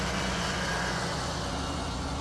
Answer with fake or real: fake